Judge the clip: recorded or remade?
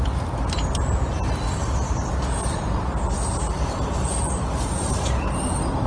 recorded